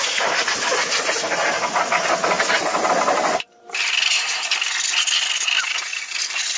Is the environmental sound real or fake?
real